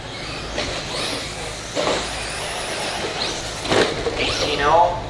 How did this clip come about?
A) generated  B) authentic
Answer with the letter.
B